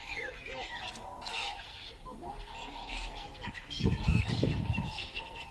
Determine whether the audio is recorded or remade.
remade